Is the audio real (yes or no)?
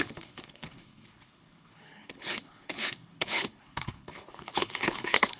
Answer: no